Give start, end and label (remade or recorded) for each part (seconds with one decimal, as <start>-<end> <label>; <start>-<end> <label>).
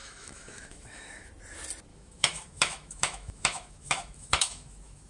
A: 0.0-1.3 remade; 1.3-1.9 recorded; 1.9-5.1 remade